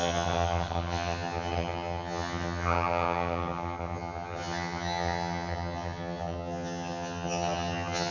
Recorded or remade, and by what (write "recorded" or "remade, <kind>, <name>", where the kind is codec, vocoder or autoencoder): remade, vocoder, HiFi-GAN